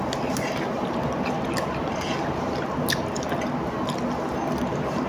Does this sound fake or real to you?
real